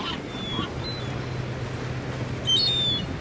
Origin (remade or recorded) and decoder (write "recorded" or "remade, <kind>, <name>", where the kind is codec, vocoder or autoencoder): recorded